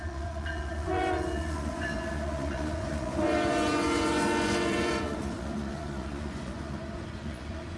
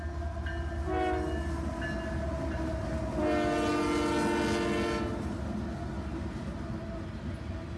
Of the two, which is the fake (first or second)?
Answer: first